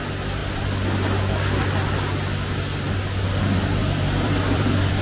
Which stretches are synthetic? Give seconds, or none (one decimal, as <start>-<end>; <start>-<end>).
3.8-5.0